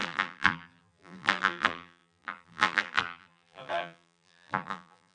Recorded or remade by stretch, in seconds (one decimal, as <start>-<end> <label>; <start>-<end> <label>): 0.0-5.1 remade